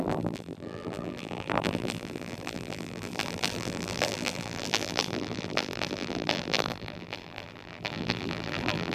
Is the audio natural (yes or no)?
no